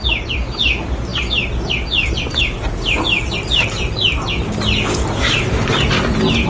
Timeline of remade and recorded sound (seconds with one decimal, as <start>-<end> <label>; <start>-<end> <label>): 0.0-6.5 recorded